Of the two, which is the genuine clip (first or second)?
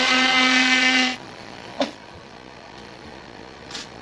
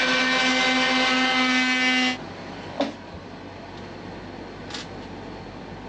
second